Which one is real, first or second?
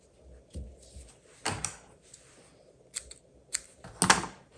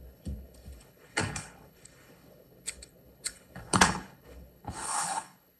first